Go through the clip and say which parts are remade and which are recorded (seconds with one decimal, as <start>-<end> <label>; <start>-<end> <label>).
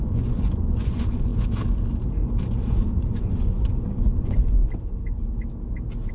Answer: 0.0-1.3 remade; 1.3-2.7 recorded; 2.7-4.6 remade; 4.6-6.1 recorded